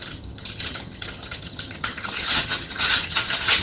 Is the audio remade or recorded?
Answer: remade